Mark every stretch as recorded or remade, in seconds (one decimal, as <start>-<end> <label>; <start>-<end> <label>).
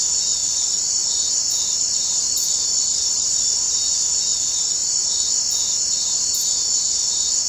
0.0-0.4 recorded; 0.4-3.7 remade; 3.7-4.8 recorded; 4.8-5.8 remade; 5.8-7.5 recorded